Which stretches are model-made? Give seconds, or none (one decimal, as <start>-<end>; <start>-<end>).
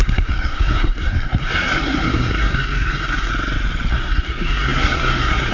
0.0-3.3; 3.9-5.5